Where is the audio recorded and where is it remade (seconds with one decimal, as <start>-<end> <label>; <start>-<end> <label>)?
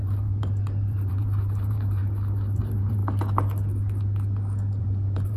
0.0-2.0 remade; 2.0-2.6 recorded; 2.6-3.0 remade; 3.0-4.8 recorded; 4.8-5.4 remade